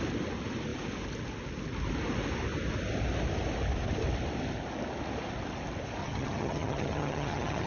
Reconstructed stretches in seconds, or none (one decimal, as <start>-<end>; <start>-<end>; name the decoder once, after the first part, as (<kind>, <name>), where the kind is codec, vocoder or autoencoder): 6.0-7.7 (vocoder, HiFi-GAN)